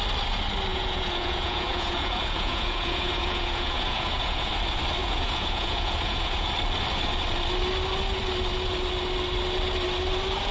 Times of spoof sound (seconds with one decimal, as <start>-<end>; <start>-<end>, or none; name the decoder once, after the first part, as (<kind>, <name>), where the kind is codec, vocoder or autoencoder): 0.7-4.5 (vocoder, Vocos); 5.0-6.5